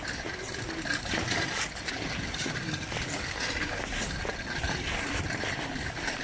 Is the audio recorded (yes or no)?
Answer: no